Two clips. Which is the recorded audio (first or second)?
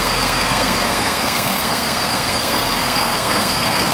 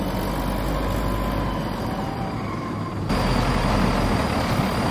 second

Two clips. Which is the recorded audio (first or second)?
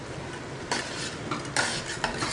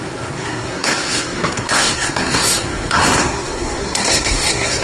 first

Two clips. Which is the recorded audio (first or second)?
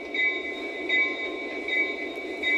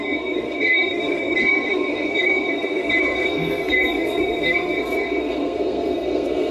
first